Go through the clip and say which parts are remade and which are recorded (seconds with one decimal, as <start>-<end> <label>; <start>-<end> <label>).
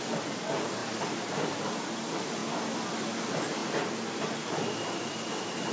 0.0-5.7 recorded